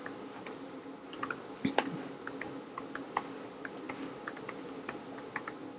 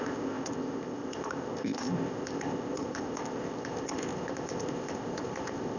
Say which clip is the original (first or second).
first